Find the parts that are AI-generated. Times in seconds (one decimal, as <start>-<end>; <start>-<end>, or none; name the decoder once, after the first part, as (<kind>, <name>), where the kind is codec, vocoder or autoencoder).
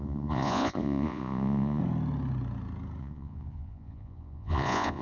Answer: 0.0-1.8 (vocoder, Vocos); 3.0-5.0